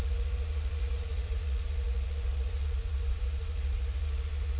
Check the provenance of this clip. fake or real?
fake